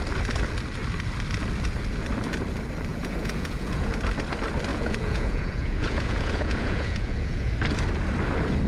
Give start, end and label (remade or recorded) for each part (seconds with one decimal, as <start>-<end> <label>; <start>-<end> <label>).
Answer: 0.0-2.9 recorded; 2.9-3.9 remade; 3.9-4.7 recorded; 4.7-7.5 remade; 7.5-8.7 recorded